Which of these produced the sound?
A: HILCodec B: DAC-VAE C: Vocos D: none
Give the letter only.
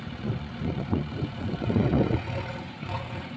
C